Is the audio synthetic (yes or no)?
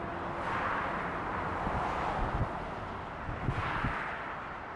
no